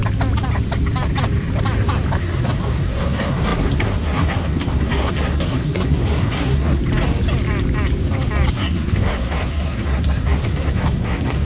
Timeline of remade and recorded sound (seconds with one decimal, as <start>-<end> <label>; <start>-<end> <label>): 0.0-2.2 recorded; 2.2-6.8 remade; 6.8-8.5 recorded; 8.5-11.4 remade